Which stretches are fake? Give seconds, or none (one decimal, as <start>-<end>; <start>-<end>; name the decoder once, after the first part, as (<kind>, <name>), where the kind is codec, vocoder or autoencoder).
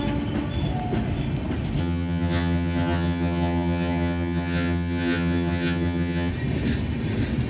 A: 1.8-6.3 (vocoder, HiFi-GAN)